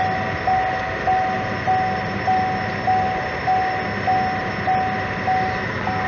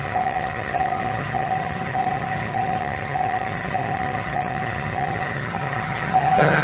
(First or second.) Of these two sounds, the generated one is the second